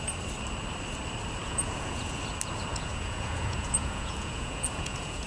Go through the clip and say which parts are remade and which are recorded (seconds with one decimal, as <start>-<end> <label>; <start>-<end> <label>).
0.0-1.4 recorded; 1.4-2.2 remade; 2.2-2.7 recorded; 2.7-5.3 remade